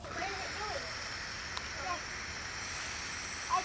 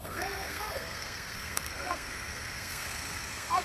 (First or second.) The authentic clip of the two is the first